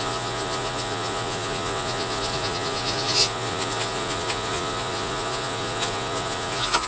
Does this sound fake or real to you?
fake